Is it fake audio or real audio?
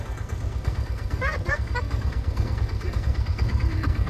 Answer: fake